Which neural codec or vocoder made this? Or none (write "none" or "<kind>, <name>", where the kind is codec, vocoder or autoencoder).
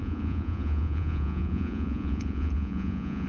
vocoder, Vocos